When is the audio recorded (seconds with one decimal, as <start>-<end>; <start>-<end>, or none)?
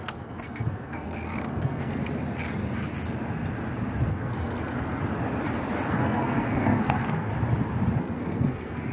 2.0-4.1; 5.0-5.9; 7.3-8.0